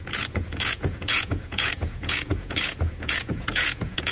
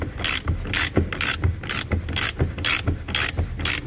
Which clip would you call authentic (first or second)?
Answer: second